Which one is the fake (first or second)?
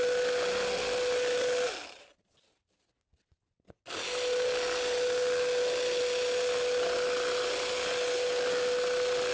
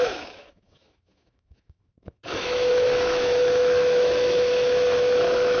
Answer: second